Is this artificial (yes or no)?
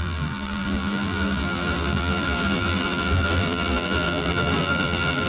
yes